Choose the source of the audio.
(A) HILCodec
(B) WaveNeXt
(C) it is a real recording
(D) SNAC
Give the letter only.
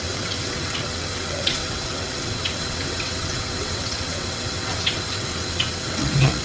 B